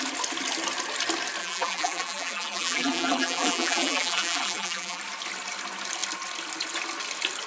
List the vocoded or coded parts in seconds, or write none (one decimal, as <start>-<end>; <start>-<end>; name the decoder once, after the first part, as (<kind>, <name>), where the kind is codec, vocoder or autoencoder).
1.4-5.0 (vocoder, BigVGAN v2)